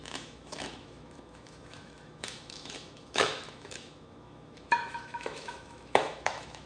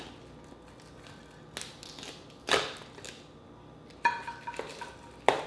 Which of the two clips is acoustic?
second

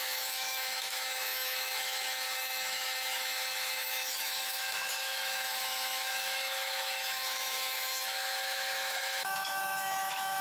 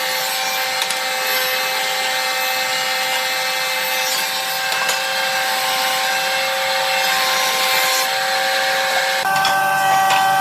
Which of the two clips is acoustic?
second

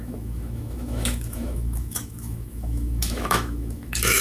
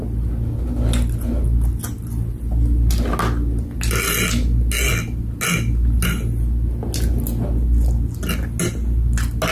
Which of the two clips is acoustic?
second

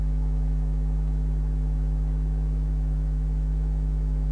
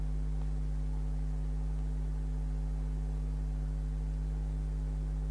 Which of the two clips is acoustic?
second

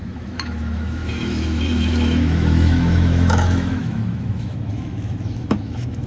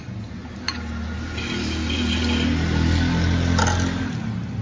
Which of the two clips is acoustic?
second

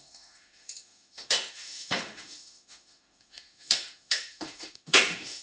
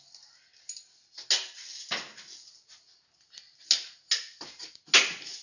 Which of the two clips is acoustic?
second